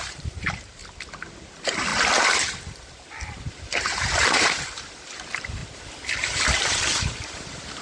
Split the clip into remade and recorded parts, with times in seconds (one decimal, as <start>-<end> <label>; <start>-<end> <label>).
0.0-0.8 remade; 0.8-1.3 recorded; 1.3-1.9 remade; 1.9-3.5 recorded; 3.5-5.6 remade; 5.6-6.6 recorded; 6.6-7.8 remade